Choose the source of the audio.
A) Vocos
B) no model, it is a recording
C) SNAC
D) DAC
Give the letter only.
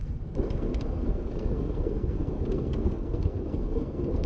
C